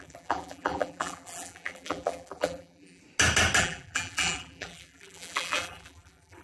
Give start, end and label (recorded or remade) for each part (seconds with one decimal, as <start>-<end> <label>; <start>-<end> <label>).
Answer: 0.0-3.0 remade; 3.0-3.6 recorded; 3.6-6.4 remade